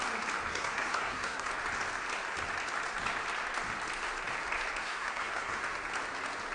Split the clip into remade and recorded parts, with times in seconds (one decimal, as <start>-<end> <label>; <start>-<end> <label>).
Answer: 0.0-0.5 recorded; 0.5-1.5 remade; 1.5-4.8 recorded; 4.8-5.6 remade; 5.6-6.5 recorded